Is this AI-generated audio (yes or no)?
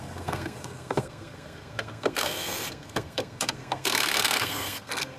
yes